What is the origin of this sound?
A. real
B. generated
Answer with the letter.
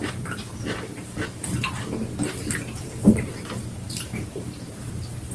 B